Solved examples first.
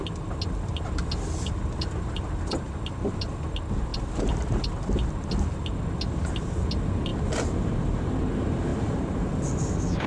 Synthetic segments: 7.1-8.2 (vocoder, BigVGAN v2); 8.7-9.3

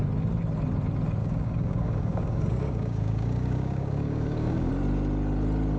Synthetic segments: 1.2-4.7 (codec, DAC)

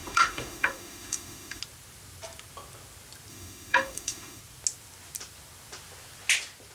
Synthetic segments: 0.0-1.6 (autoencoder, DAC-VAE); 3.3-4.4

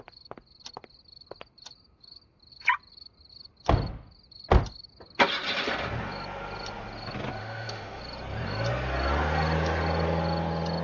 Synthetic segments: 7.4-8.0 (autoencoder, DAC-VAE)

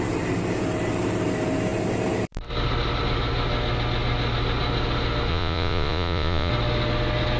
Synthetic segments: 5.3-6.5 (vocoder, Vocos)